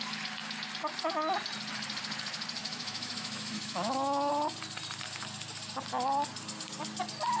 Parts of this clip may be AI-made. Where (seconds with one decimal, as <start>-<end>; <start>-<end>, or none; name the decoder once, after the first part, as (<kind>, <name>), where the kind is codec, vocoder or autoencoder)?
2.6-4.3 (autoencoder, DAC-VAE)